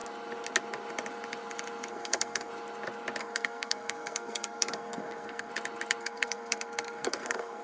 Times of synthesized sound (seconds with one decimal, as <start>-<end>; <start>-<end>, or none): 1.9-2.5; 3.2-5.5; 6.0-7.6